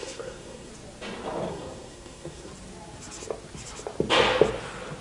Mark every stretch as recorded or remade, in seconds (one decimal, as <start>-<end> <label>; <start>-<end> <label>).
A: 0.0-0.7 remade; 0.7-1.5 recorded; 1.5-2.5 remade; 2.5-5.0 recorded

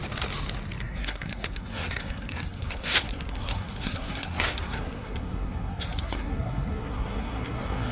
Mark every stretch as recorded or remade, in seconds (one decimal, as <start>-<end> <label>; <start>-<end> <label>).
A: 0.0-0.8 recorded; 0.8-7.9 remade